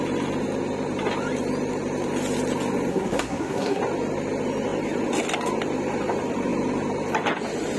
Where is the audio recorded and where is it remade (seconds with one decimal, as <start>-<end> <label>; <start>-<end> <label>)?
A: 0.0-2.9 recorded; 2.9-3.8 remade; 3.8-7.8 recorded

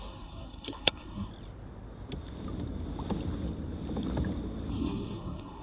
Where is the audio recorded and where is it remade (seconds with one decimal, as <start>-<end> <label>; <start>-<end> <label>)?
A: 0.0-1.3 remade; 1.3-4.7 recorded; 4.7-5.6 remade